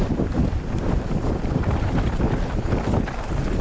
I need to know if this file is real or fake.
real